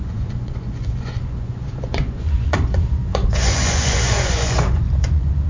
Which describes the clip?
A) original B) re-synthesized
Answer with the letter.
B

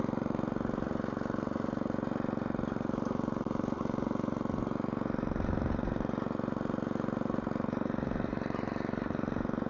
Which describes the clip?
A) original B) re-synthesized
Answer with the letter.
A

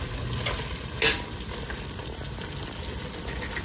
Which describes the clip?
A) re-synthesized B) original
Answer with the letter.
B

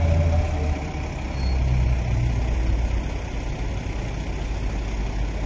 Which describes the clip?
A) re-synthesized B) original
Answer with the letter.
B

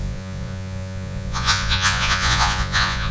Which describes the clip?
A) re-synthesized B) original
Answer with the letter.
A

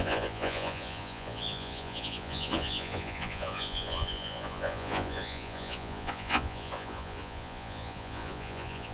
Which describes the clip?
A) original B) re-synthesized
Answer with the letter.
B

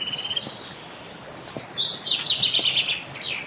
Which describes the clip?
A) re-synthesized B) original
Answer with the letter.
B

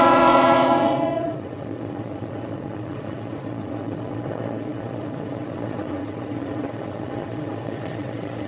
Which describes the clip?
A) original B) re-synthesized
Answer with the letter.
B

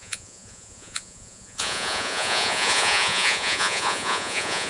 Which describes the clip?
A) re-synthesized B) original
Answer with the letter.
A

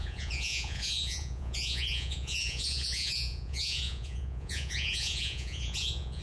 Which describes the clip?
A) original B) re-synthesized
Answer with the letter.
B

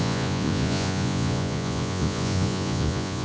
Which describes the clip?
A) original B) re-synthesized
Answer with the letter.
B